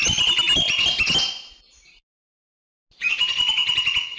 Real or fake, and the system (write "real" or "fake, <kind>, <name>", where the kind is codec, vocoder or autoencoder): real